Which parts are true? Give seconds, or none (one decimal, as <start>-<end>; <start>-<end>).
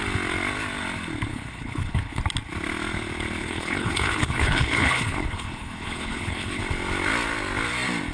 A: 0.0-1.3; 2.2-3.4; 6.6-8.1